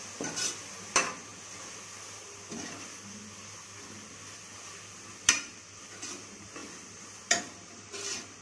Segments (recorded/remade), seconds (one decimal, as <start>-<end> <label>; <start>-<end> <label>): 0.0-8.4 recorded